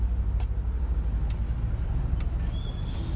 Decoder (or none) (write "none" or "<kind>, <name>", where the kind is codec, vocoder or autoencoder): none